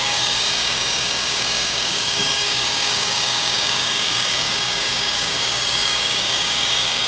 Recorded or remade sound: remade